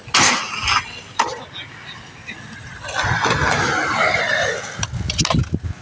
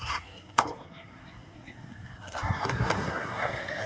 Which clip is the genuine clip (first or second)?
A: first